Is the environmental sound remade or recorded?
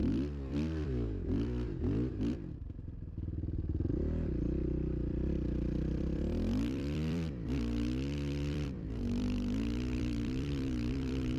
remade